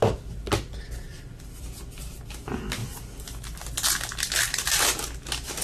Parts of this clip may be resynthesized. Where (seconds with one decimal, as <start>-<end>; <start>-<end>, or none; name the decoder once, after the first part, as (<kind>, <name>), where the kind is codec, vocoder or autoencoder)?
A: 1.1-2.3 (vocoder, BigVGAN v2)